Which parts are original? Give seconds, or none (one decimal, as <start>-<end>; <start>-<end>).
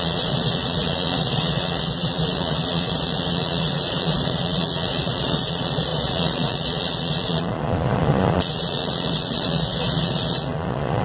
none